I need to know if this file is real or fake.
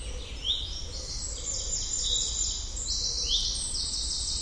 real